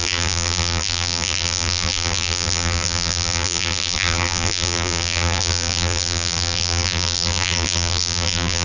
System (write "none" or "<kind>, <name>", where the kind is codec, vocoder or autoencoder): vocoder, BigVGAN v2